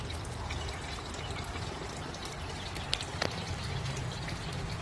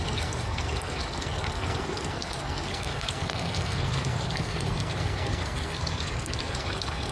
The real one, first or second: first